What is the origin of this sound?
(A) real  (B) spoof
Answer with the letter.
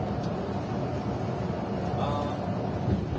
A